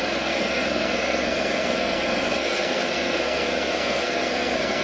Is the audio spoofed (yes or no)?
yes